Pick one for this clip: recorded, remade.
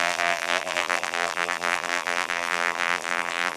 remade